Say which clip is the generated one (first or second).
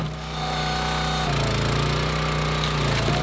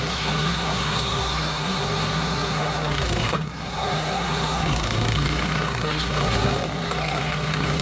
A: second